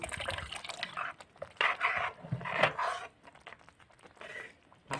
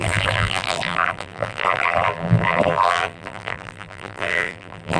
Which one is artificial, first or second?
second